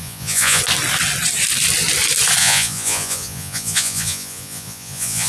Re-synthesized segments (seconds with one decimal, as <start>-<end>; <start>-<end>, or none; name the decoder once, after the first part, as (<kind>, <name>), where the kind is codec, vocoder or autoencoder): 0.0-0.6 (vocoder, Vocos); 2.4-5.3